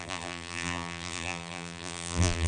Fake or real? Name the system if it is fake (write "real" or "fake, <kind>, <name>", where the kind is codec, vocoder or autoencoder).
fake, vocoder, BigVGAN v2